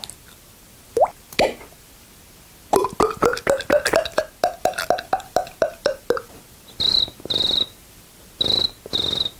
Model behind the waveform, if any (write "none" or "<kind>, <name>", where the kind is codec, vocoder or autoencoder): none